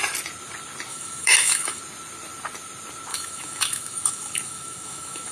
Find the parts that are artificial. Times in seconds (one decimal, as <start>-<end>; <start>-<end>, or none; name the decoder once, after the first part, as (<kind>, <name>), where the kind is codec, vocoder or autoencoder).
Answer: 0.9-1.8 (autoencoder, DAC-VAE); 3.1-5.3